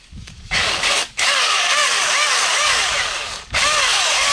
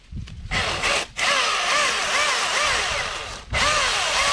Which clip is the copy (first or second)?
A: first